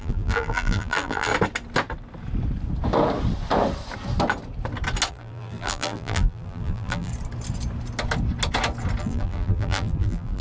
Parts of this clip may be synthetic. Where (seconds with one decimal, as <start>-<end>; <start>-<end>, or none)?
0.0-1.3; 5.1-7.1; 9.0-10.4